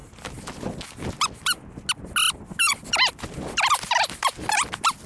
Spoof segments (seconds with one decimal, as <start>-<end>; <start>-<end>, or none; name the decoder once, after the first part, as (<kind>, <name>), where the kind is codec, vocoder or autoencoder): none